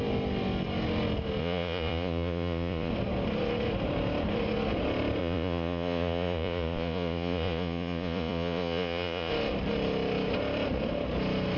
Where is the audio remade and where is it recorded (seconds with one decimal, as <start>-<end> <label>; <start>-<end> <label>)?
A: 0.0-1.4 recorded; 1.4-2.9 remade; 2.9-5.2 recorded; 5.2-9.3 remade; 9.3-11.6 recorded